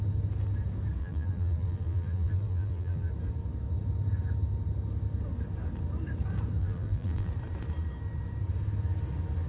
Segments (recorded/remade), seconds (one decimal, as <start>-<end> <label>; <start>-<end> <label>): 0.0-1.0 recorded; 1.0-3.1 remade; 3.1-6.6 recorded; 6.6-7.3 remade; 7.3-9.5 recorded